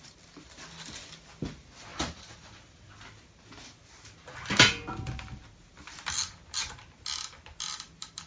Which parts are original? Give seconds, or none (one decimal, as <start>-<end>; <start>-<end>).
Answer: 0.0-1.9; 2.9-8.3